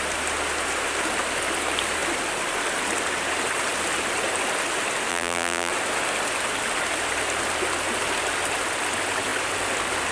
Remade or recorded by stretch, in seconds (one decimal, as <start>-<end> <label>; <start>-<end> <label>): 0.0-5.1 recorded; 5.1-5.7 remade; 5.7-10.1 recorded

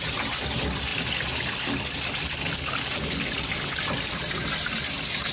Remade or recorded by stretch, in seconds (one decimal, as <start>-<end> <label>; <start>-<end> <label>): 0.0-5.3 recorded

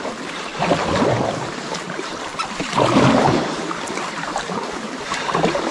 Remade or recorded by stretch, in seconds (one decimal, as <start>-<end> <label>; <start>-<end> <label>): 0.0-0.5 remade; 0.5-1.1 recorded; 1.1-2.3 remade; 2.3-3.6 recorded; 3.6-5.7 remade

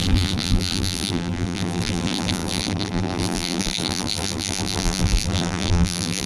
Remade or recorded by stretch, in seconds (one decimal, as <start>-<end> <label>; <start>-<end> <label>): 0.0-6.3 remade

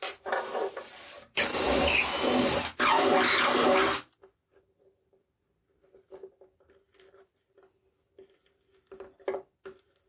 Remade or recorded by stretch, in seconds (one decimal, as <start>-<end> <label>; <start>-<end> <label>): 0.0-1.4 remade; 1.4-10.1 recorded

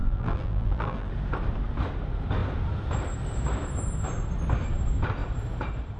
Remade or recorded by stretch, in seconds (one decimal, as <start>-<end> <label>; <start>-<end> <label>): 0.0-1.1 remade; 1.1-6.0 recorded

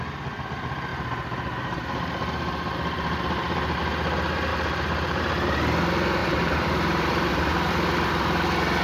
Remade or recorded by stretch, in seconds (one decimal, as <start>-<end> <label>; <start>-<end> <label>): 0.0-0.9 recorded; 0.9-3.8 remade; 3.8-4.5 recorded; 4.5-5.2 remade; 5.2-6.2 recorded; 6.2-7.3 remade; 7.3-8.8 recorded

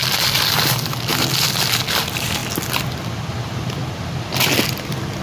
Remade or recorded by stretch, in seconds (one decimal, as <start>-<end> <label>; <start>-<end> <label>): 0.0-1.1 remade; 1.1-1.9 recorded; 1.9-2.4 remade; 2.4-2.9 recorded; 2.9-3.8 remade; 3.8-5.2 recorded